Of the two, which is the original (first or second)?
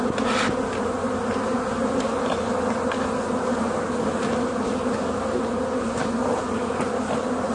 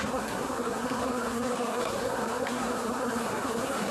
first